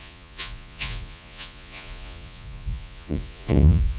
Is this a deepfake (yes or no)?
yes